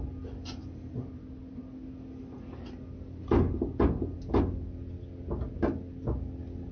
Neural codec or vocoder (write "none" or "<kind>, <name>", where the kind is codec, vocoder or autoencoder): none